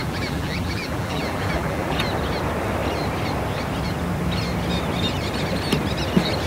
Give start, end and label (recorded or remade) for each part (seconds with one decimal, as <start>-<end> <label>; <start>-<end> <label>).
0.0-2.0 remade; 2.0-6.5 recorded